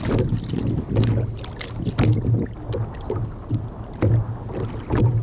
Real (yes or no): yes